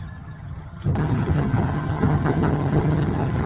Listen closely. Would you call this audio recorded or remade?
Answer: remade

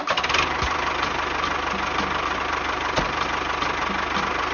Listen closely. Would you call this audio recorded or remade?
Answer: recorded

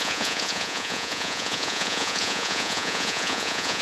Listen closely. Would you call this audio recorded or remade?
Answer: remade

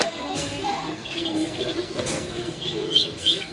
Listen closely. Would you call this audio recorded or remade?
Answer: remade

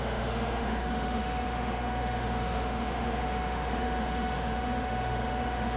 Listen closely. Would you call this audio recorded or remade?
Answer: remade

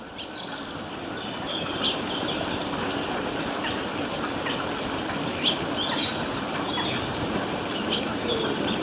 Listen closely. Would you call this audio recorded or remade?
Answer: recorded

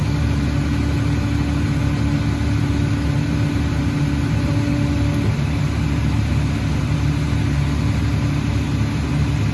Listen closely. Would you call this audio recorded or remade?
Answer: recorded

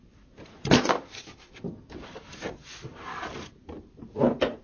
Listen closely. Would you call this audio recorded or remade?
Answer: remade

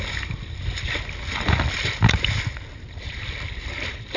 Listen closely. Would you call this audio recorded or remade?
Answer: recorded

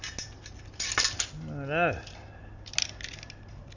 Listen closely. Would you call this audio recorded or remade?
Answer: recorded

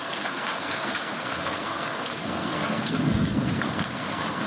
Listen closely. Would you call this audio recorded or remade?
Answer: remade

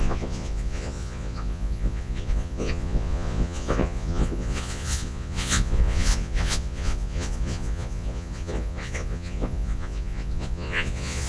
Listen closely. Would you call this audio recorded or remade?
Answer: remade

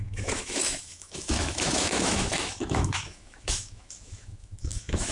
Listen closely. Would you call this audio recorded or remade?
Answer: remade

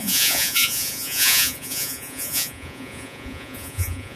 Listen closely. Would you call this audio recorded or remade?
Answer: remade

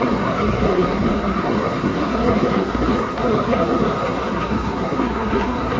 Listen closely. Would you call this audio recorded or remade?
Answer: remade